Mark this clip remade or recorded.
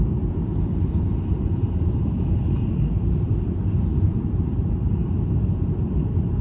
remade